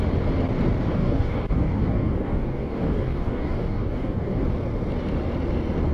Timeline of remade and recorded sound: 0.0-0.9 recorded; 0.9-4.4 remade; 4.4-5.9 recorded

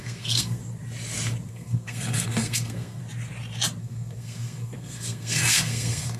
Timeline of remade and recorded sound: 0.0-0.6 remade; 0.6-1.5 recorded; 1.5-3.0 remade; 3.0-3.8 recorded; 3.8-6.2 remade

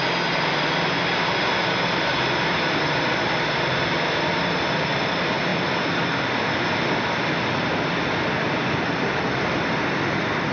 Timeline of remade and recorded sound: 0.0-10.5 recorded

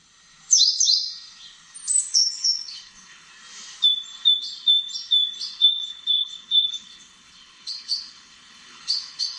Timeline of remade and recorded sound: 0.0-2.1 recorded; 2.1-3.3 remade; 3.3-5.5 recorded; 5.5-9.4 remade

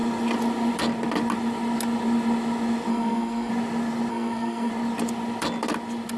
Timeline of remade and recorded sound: 0.0-2.9 recorded; 2.9-3.5 remade; 3.5-4.1 recorded; 4.1-4.7 remade; 4.7-6.2 recorded

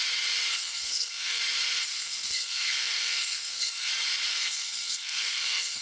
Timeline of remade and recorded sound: 0.0-0.5 recorded; 0.5-1.4 remade; 1.4-1.9 recorded; 1.9-3.9 remade; 3.9-4.3 recorded; 4.3-5.8 remade

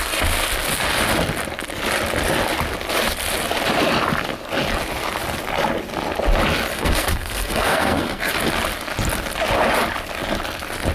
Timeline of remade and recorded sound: 0.0-6.7 recorded; 6.7-8.3 remade; 8.3-10.9 recorded

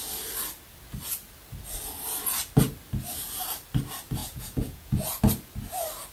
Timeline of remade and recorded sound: 0.0-4.2 recorded; 4.2-5.2 remade; 5.2-6.1 recorded